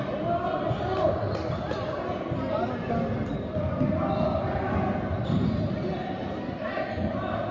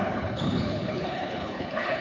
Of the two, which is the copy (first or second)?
second